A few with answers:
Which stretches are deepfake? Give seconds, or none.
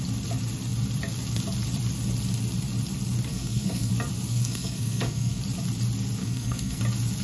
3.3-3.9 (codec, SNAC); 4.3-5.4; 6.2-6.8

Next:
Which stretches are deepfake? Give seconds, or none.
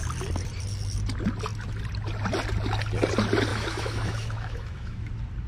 3.5-5.1 (autoencoder, DAC-VAE)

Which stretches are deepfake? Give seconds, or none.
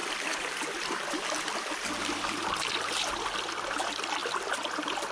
none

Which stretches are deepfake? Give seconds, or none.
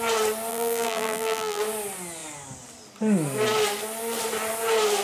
0.5-1.6 (vocoder, BigVGAN v2)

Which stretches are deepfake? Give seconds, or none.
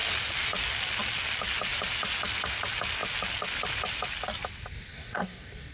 4.9-5.7 (codec, DAC)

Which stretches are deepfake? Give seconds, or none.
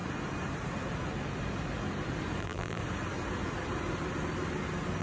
2.4-2.8 (vocoder, BigVGAN v2)